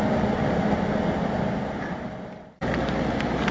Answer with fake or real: real